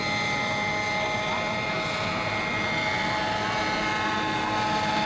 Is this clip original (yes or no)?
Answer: yes